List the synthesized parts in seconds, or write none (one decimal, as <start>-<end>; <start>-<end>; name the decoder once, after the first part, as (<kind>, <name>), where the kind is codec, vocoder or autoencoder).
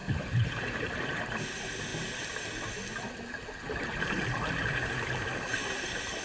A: 0.0-1.4 (vocoder, BigVGAN v2)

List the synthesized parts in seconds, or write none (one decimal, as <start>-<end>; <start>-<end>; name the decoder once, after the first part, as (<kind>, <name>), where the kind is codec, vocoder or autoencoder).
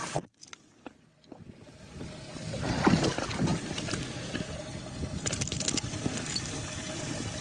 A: none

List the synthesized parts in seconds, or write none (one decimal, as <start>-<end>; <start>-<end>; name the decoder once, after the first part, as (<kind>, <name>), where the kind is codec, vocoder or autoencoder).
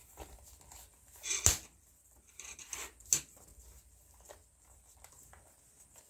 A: 0.0-3.1 (vocoder, BigVGAN v2); 3.5-5.1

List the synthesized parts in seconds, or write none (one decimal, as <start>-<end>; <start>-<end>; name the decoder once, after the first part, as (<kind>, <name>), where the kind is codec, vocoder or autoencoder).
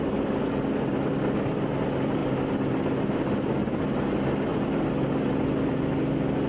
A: 2.2-2.7 (vocoder, BigVGAN v2)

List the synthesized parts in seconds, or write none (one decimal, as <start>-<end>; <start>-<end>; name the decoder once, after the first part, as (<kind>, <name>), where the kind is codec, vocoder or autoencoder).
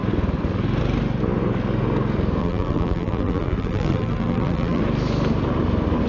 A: 2.4-4.8 (vocoder, BigVGAN v2)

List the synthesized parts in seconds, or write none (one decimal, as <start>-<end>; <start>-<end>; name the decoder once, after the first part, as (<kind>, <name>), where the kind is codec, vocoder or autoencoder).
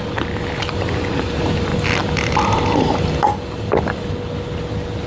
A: 0.0-0.6 (vocoder, BigVGAN v2); 1.1-1.7